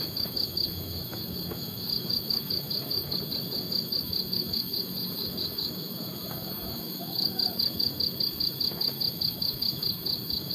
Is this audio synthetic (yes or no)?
yes